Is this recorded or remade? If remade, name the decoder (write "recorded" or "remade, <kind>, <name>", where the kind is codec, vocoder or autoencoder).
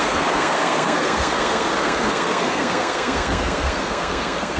remade, codec, SNAC